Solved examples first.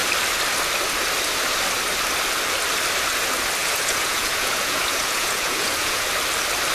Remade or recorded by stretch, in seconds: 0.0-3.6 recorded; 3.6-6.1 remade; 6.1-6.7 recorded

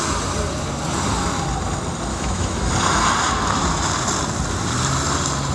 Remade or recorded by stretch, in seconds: 0.0-2.1 recorded; 2.1-2.7 remade; 2.7-5.5 recorded

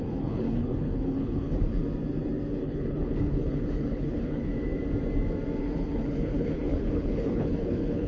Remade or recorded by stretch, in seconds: 0.0-1.8 remade; 1.8-2.5 recorded; 2.5-4.5 remade; 4.5-5.6 recorded; 5.6-8.1 remade

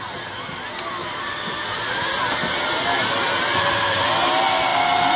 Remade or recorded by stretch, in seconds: 0.0-1.0 recorded; 1.0-4.1 remade; 4.1-5.2 recorded

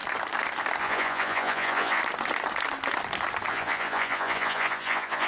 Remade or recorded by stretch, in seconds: 0.0-0.8 recorded; 0.8-2.0 remade; 2.0-3.5 recorded; 3.5-5.3 remade